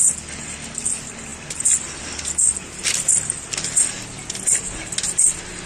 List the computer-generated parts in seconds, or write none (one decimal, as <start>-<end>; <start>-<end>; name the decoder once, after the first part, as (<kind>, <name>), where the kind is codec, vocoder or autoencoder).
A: none

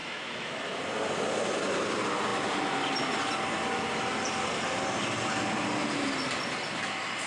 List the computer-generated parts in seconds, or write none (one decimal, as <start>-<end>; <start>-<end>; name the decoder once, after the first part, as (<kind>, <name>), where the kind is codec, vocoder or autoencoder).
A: 0.0-0.8 (autoencoder, DAC-VAE)

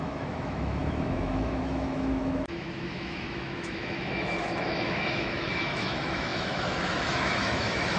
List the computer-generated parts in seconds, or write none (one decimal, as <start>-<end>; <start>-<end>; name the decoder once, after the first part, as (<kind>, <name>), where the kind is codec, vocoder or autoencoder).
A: 0.0-8.0 (autoencoder, DAC-VAE)